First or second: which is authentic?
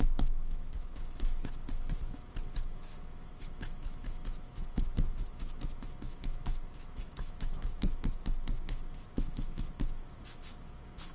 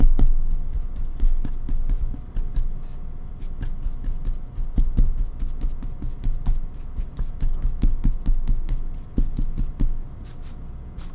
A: second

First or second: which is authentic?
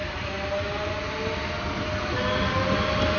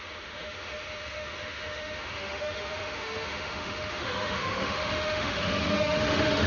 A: first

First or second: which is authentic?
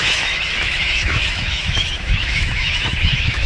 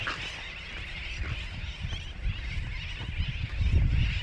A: second